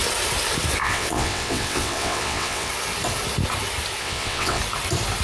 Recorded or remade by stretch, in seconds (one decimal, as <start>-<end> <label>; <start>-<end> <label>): 0.0-0.8 recorded; 0.8-2.7 remade; 2.7-4.0 recorded; 4.0-4.6 remade; 4.6-5.2 recorded